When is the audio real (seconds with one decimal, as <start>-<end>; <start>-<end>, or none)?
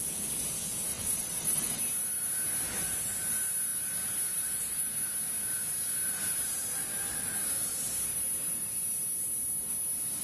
0.0-0.9; 1.8-10.2